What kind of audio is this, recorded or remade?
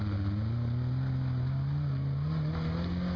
recorded